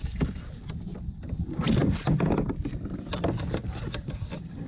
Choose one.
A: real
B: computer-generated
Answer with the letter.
B